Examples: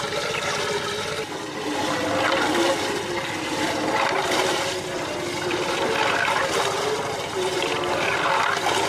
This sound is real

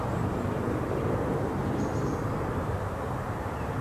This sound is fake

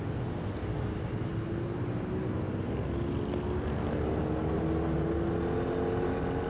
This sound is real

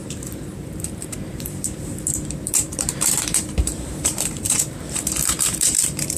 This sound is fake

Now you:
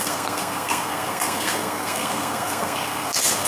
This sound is fake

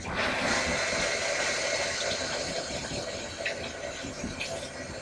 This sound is real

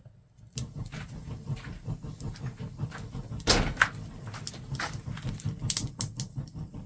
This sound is real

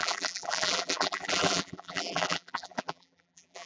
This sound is fake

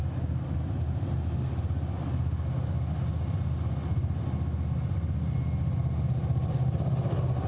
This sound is real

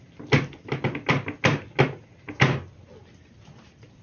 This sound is real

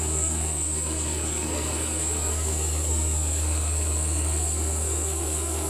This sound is fake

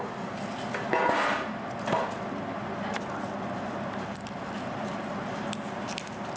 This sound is real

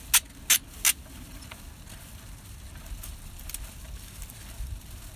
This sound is real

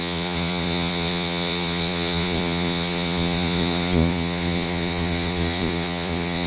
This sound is fake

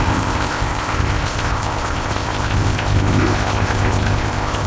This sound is fake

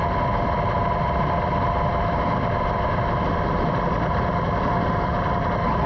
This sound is real